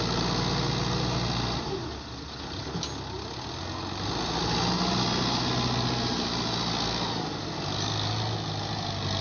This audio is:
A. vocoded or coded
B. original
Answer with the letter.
B